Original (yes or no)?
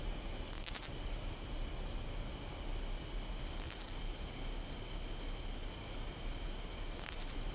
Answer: yes